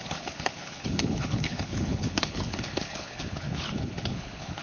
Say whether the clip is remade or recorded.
remade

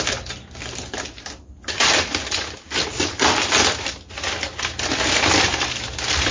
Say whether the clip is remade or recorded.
recorded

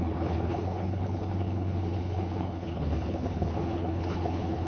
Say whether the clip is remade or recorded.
remade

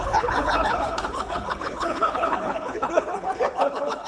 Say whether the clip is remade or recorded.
remade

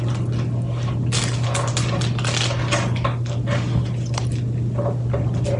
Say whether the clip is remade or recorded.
recorded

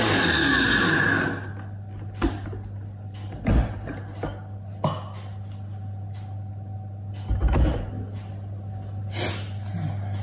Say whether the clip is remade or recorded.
recorded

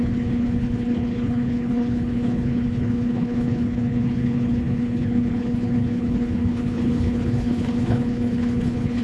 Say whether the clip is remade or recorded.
remade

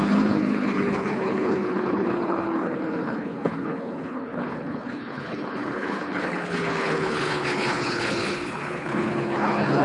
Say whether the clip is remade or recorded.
remade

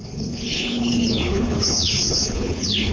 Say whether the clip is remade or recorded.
remade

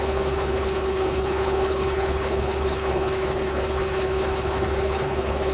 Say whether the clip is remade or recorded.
remade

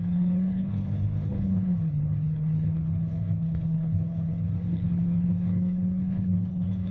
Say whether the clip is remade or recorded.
remade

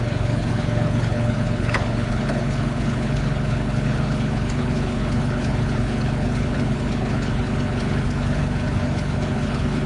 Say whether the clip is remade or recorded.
remade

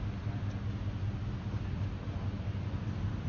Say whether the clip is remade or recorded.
recorded